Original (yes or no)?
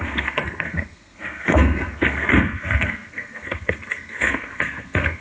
no